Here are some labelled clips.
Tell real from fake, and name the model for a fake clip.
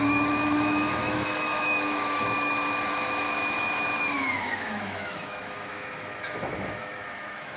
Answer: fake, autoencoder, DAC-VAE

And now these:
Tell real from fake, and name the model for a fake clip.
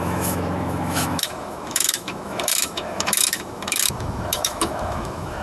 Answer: fake, autoencoder, DAC-VAE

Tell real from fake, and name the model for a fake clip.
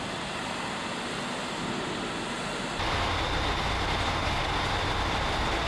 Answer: real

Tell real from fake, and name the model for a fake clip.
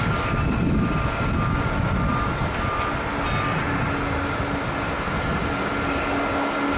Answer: real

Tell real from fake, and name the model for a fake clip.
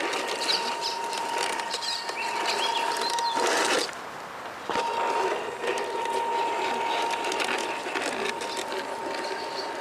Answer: real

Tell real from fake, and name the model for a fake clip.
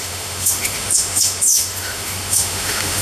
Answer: fake, autoencoder, DAC-VAE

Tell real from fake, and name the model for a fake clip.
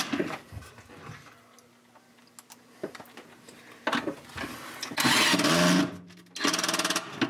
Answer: real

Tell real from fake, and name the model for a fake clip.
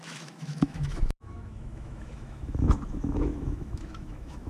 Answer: fake, autoencoder, DAC-VAE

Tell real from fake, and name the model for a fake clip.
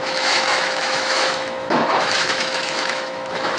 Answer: fake, autoencoder, DAC-VAE